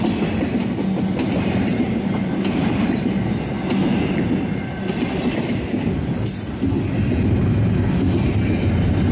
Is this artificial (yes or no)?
no